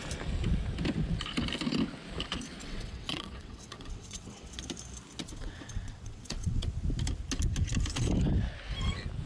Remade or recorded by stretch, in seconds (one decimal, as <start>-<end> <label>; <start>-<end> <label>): 0.0-2.6 recorded; 2.6-4.6 remade; 4.6-5.2 recorded; 5.2-6.7 remade; 6.7-9.3 recorded